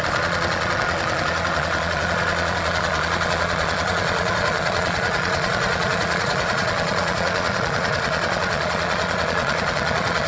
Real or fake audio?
fake